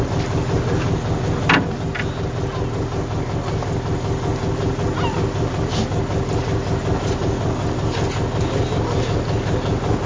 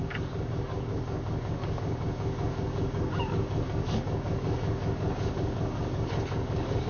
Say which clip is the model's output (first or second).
second